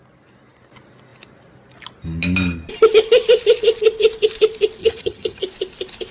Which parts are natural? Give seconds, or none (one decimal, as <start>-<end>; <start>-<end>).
0.0-4.8; 5.4-6.1